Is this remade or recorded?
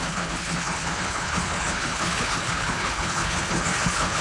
remade